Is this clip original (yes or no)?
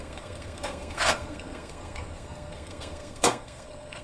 no